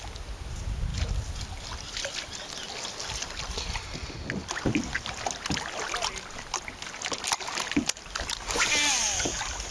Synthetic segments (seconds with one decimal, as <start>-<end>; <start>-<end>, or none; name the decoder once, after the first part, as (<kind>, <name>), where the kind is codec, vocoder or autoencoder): none